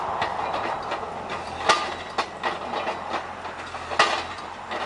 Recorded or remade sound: recorded